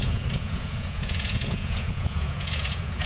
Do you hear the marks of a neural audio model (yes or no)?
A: yes